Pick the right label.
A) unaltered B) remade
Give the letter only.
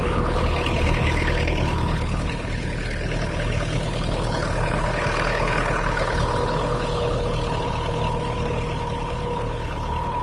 B